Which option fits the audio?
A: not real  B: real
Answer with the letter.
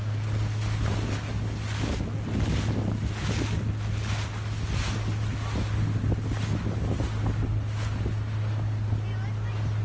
B